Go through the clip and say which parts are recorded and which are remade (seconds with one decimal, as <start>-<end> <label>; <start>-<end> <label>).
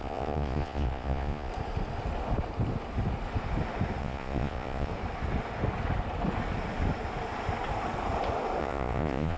0.0-1.5 remade; 1.5-4.0 recorded; 4.0-4.9 remade; 4.9-8.6 recorded; 8.6-9.4 remade